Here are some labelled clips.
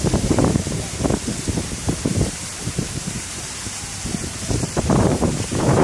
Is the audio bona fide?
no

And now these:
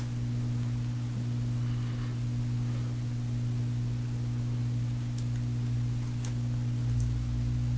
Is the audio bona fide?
yes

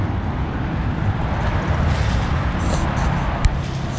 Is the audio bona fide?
yes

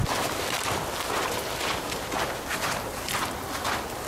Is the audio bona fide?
yes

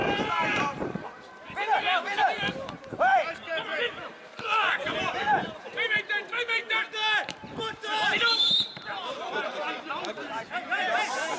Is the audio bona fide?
no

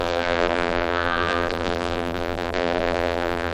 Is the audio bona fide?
no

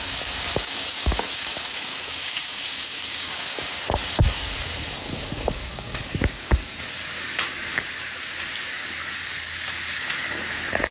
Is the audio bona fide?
no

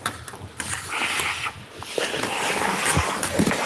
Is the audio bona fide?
yes